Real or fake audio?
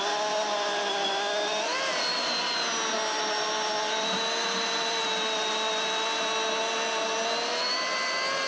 real